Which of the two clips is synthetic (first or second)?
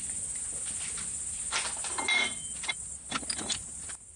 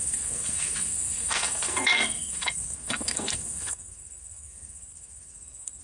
second